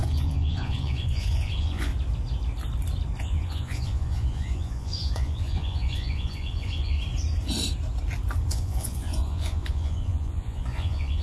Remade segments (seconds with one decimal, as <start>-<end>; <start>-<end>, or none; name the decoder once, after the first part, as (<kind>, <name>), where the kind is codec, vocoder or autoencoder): 0.0-1.9 (vocoder, Vocos); 3.2-7.0; 8.5-11.2